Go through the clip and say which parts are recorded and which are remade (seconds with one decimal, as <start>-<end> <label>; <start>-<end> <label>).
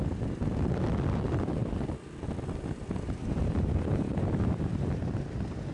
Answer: 0.0-5.7 recorded